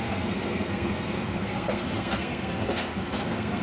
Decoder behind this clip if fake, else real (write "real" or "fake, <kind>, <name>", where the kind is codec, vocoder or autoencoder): fake, codec, SNAC